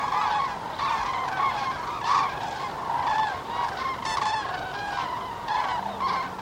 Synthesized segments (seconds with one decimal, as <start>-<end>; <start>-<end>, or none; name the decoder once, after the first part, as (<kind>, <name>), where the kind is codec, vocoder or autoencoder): 1.5-5.2 (vocoder, BigVGAN v2)